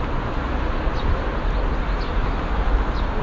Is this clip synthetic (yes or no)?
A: no